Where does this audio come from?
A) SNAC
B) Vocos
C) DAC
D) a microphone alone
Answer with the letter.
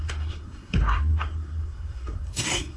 A